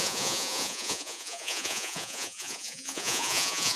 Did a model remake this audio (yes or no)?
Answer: yes